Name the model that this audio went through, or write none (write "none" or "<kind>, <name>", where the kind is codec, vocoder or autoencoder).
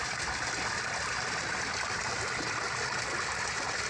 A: none